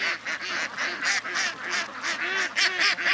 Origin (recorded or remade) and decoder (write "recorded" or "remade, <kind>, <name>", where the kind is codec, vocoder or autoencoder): recorded